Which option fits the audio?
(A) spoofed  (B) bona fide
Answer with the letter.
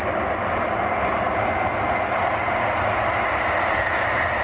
B